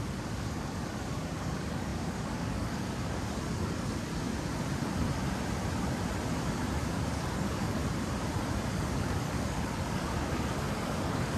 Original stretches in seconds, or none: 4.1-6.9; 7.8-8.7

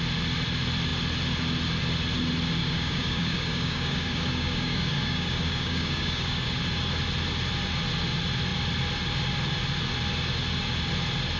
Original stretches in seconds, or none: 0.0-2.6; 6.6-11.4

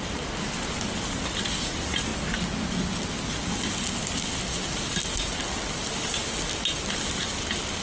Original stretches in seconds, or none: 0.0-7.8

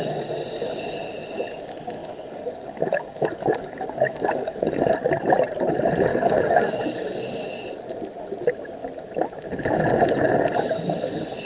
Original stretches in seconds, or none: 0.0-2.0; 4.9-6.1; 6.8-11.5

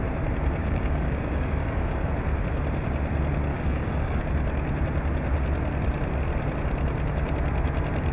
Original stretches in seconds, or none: 0.0-0.6; 2.1-3.5; 4.2-8.1

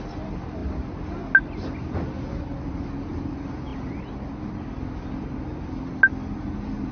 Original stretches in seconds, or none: 0.0-6.9

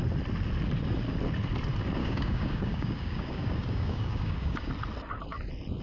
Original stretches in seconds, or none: 0.0-2.0; 4.7-5.8

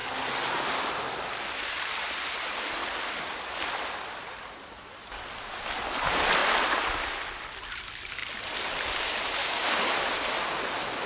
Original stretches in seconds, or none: 0.0-9.4; 9.9-11.1